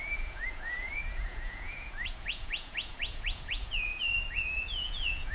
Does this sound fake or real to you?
fake